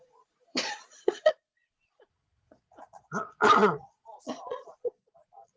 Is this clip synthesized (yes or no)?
yes